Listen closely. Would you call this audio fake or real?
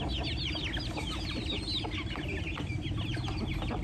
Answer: real